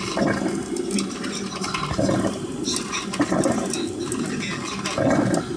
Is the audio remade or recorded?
recorded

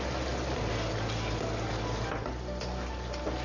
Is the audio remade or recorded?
recorded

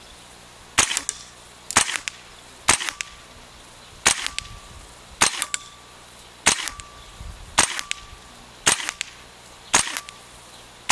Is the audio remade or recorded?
recorded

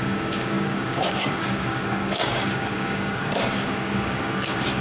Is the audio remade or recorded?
remade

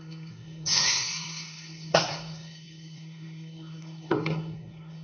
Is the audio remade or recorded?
remade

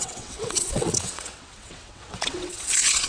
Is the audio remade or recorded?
remade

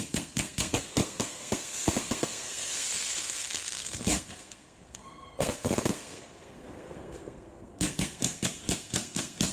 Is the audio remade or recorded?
remade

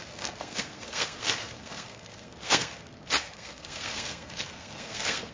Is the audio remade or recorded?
remade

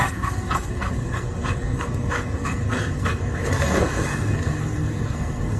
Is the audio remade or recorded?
remade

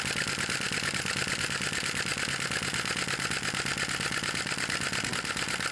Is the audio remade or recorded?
recorded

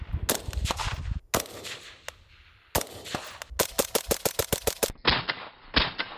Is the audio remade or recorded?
recorded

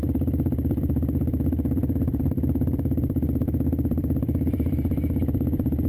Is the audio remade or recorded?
remade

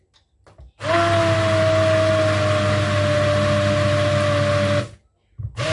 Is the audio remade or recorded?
recorded